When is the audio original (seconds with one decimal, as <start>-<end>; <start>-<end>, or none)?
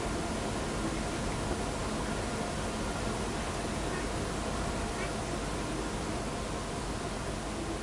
0.0-7.8